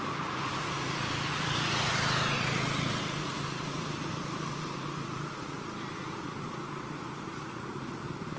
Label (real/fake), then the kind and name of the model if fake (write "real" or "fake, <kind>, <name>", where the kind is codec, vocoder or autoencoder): fake, vocoder, Vocos